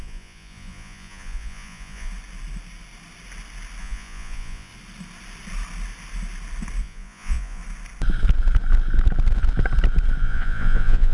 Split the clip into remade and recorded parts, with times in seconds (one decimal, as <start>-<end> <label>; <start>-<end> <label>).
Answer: 0.0-2.1 remade; 2.1-3.8 recorded; 3.8-4.7 remade; 4.7-6.8 recorded; 6.8-7.6 remade; 7.6-10.2 recorded; 10.2-11.1 remade